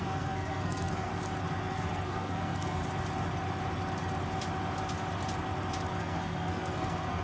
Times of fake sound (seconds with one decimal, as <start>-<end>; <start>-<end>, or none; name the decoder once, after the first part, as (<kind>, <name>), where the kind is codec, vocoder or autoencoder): 0.0-1.1 (codec, SNAC); 1.6-2.8; 6.0-7.2